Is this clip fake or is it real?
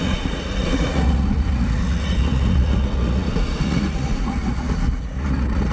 fake